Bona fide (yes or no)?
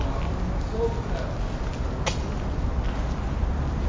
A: yes